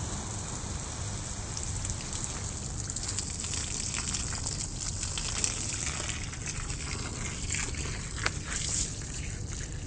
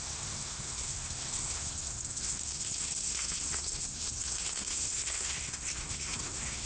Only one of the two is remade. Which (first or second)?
second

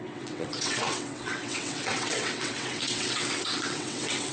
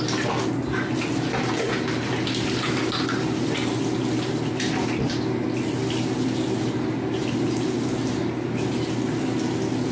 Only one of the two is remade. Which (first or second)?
first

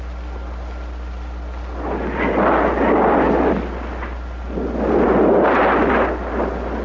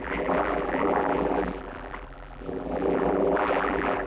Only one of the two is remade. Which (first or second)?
second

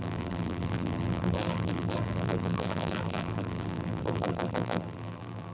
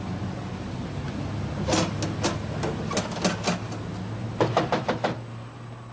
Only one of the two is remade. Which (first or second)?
first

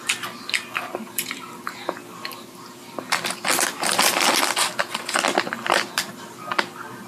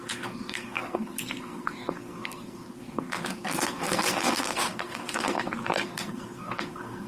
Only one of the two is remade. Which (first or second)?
second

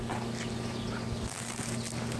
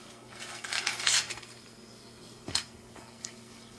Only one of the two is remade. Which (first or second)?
second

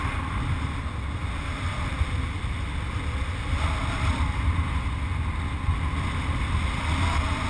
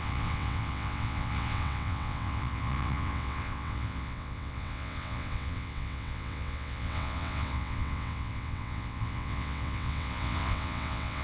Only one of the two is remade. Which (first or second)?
second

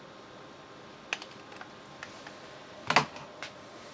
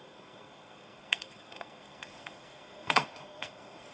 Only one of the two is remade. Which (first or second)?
second